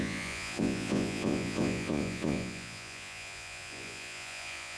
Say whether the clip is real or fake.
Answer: fake